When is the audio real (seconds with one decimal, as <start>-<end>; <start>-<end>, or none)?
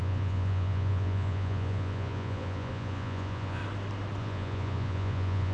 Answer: 3.6-4.2